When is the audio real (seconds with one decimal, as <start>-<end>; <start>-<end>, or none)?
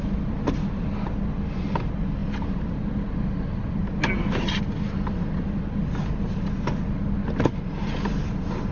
0.0-8.7